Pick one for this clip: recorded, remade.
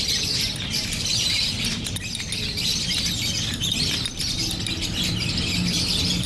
recorded